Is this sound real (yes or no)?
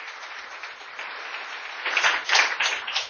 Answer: yes